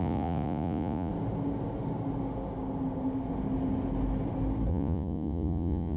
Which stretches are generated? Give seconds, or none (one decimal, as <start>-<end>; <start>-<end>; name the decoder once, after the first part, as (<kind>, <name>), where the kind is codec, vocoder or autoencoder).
0.0-1.1 (vocoder, Vocos); 4.7-6.0